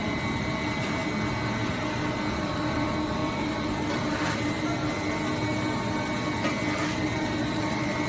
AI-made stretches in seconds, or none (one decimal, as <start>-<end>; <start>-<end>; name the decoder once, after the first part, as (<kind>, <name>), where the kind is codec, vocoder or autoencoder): 0.0-1.0 (vocoder, BigVGAN v2); 2.4-4.7; 6.9-8.1